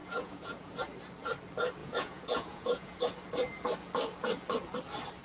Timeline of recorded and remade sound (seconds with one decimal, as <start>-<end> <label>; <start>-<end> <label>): 0.0-0.7 remade; 0.7-1.8 recorded; 1.8-3.0 remade; 3.0-5.2 recorded